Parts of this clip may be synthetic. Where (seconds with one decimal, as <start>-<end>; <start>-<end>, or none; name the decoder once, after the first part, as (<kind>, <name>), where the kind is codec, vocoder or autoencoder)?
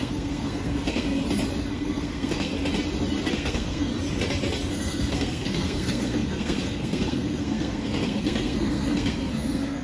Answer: 0.0-1.2 (codec, SNAC); 1.7-2.5; 3.3-3.9; 4.7-9.8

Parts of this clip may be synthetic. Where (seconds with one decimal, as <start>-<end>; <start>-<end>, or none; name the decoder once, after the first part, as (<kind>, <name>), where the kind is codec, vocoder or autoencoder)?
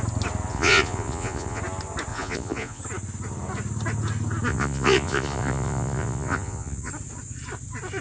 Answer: 0.5-1.6 (vocoder, Vocos); 2.1-2.8; 4.5-6.9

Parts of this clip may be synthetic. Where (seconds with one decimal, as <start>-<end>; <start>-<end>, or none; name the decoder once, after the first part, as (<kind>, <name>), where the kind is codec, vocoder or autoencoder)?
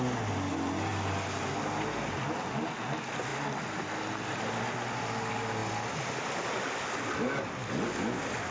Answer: none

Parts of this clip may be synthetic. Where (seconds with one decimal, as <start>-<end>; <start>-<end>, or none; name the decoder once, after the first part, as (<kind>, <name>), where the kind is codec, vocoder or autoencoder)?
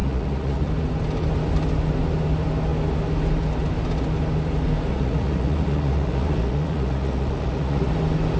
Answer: 0.0-0.7 (vocoder, Vocos); 4.9-7.9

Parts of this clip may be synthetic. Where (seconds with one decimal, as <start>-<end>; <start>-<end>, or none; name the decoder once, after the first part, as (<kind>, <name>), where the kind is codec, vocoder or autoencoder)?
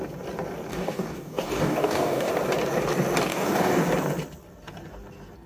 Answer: 0.7-2.3 (codec, DAC); 3.3-3.8